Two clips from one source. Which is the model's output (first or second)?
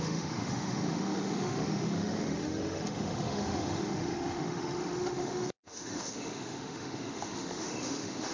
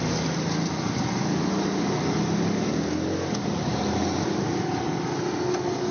first